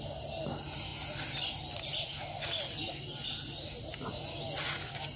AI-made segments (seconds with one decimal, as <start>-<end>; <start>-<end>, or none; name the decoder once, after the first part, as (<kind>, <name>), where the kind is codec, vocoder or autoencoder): none